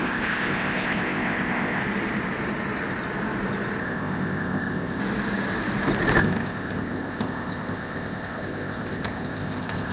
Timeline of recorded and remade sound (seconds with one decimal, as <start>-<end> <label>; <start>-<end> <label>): 0.0-1.8 remade; 1.8-3.8 recorded; 3.8-5.0 remade; 5.0-6.2 recorded; 6.2-9.9 remade